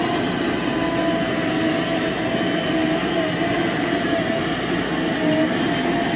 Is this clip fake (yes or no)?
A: no